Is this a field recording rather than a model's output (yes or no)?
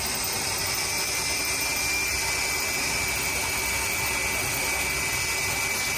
yes